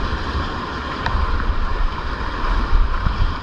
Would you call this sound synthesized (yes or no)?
yes